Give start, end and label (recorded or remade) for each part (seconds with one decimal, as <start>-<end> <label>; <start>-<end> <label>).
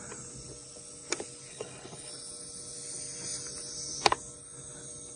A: 0.0-1.5 recorded; 1.5-2.1 remade; 2.1-5.2 recorded